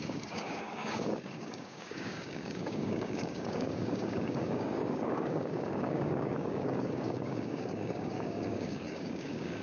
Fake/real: fake